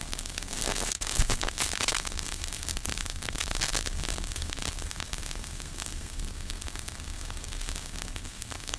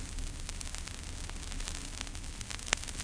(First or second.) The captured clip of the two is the second